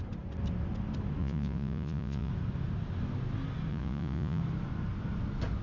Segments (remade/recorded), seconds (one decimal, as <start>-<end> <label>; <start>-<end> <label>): 0.0-1.2 recorded; 1.2-2.3 remade; 2.3-3.7 recorded; 3.7-4.4 remade; 4.4-5.6 recorded